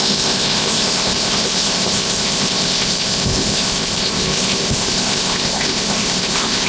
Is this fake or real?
fake